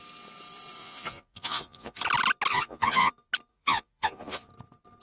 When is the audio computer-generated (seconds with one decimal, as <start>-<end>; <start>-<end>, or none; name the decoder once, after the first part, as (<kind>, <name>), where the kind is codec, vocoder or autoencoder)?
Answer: 0.8-2.0 (vocoder, Vocos); 2.5-3.1; 3.5-4.5